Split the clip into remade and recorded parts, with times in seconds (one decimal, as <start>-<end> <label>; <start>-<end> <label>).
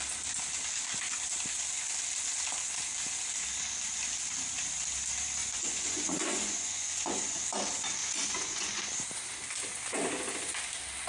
0.0-5.4 recorded; 5.4-7.4 remade; 7.4-8.0 recorded; 8.0-8.9 remade; 8.9-11.1 recorded